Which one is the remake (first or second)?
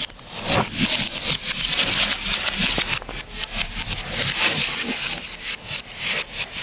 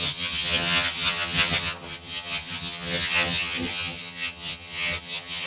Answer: second